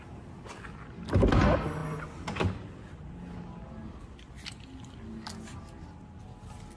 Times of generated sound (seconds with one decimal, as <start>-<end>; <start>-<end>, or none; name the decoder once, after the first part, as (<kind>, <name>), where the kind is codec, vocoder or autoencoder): none